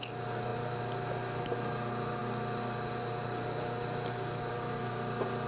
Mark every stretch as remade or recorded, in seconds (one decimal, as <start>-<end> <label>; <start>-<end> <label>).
0.0-5.5 recorded